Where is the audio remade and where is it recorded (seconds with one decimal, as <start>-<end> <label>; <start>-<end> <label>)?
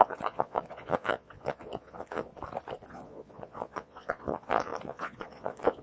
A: 0.0-2.3 remade; 2.3-2.9 recorded; 2.9-5.8 remade